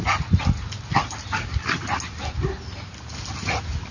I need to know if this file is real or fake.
real